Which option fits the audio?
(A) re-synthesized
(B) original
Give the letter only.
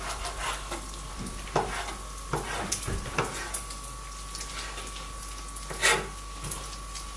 B